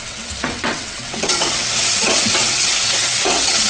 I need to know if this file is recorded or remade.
remade